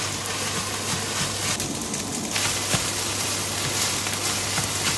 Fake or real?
real